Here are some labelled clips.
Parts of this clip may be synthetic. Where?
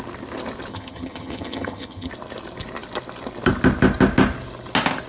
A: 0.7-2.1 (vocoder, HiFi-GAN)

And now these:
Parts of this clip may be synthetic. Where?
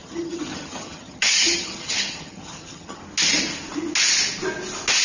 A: 0.0-3.0 (vocoder, HiFi-GAN)